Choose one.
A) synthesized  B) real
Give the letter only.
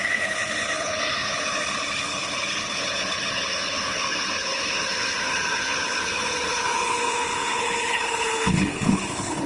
A